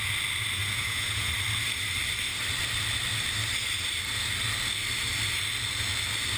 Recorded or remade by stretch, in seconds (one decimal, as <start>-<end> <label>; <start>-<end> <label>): 0.0-0.6 recorded; 0.6-1.3 remade; 1.3-6.4 recorded